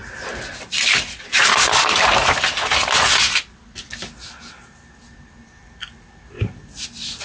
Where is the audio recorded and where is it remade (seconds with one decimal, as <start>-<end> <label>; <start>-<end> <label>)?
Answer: 0.0-7.2 recorded